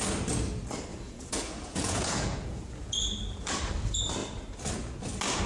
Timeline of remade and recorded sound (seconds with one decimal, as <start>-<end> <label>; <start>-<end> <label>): 0.0-0.9 recorded; 0.9-2.9 remade; 2.9-5.5 recorded